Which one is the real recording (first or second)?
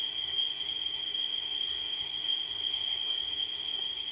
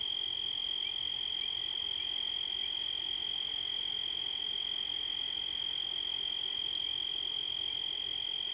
second